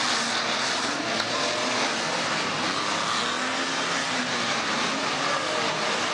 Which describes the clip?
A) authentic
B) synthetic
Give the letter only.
A